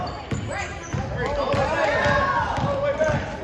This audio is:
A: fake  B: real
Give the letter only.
B